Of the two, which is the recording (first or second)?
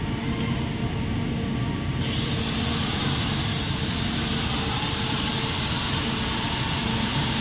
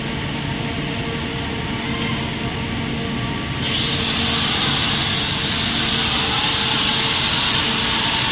second